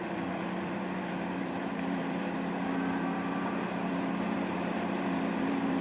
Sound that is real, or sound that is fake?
fake